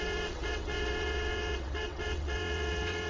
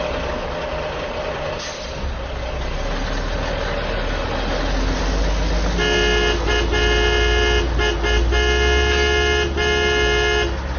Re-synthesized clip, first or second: first